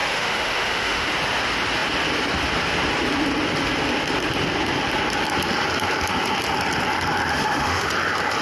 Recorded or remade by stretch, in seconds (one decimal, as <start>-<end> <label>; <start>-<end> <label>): 0.0-1.1 remade; 1.1-7.3 recorded; 7.3-7.9 remade; 7.9-8.4 recorded